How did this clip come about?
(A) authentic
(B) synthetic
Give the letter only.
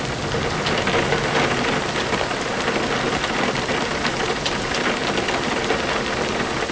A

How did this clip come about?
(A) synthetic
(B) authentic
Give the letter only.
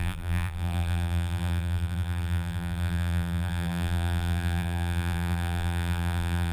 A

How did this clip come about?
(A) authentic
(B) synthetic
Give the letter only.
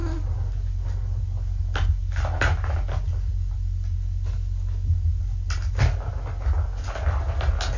A